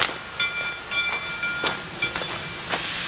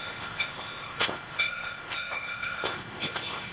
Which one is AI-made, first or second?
second